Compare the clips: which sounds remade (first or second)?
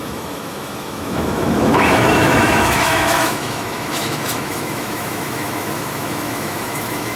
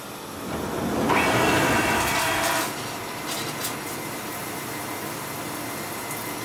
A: first